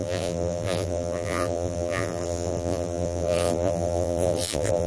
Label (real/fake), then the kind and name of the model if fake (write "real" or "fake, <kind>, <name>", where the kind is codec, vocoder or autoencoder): fake, vocoder, BigVGAN v2